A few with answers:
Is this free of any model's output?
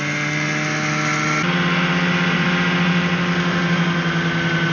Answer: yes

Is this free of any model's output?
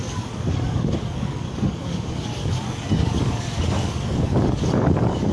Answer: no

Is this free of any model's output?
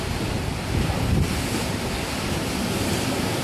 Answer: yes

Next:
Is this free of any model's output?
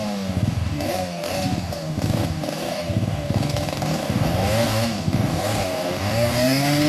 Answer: no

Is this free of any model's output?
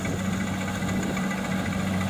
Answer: yes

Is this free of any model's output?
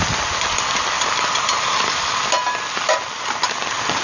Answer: yes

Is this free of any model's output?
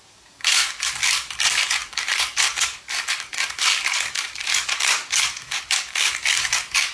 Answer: no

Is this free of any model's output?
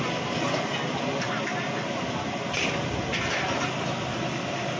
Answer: yes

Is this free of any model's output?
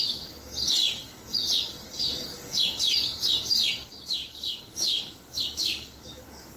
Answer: no